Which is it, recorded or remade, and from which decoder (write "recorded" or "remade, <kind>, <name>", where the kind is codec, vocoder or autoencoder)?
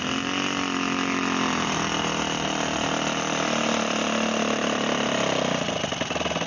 recorded